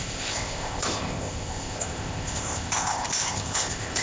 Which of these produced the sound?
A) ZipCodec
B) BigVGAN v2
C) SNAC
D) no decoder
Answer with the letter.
A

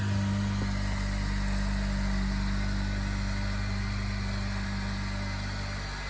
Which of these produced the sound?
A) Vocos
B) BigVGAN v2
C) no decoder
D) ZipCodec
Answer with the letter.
C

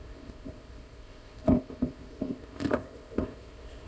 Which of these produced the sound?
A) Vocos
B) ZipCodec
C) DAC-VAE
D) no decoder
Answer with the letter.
B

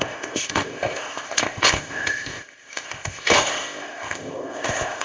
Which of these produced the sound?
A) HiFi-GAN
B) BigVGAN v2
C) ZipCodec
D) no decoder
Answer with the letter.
C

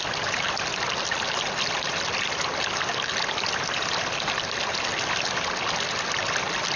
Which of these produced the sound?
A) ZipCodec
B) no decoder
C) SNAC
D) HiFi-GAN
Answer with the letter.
B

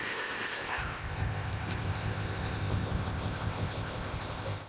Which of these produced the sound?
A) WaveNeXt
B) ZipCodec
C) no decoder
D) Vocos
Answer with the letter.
B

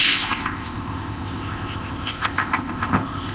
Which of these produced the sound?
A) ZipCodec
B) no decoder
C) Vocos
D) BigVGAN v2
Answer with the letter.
A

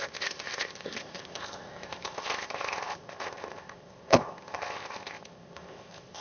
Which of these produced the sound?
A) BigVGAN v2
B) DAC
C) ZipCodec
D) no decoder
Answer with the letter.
C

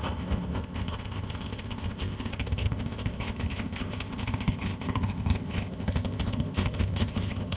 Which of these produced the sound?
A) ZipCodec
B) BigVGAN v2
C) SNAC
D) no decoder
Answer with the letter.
A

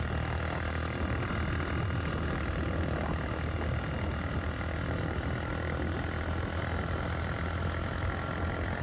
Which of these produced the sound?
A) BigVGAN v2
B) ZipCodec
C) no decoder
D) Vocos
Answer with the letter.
C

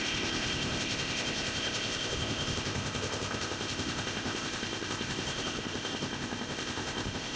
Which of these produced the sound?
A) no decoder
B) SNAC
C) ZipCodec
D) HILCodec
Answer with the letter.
C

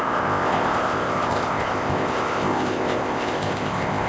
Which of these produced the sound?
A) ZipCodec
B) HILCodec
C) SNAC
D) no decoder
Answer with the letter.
A